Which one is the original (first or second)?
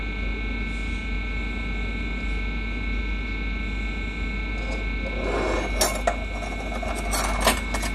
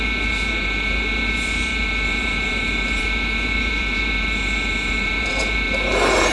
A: first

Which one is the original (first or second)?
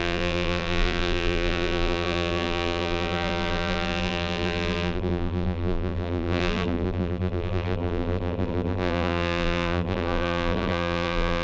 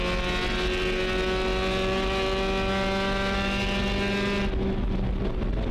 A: second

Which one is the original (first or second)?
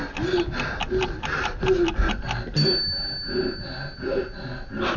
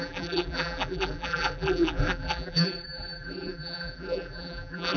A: first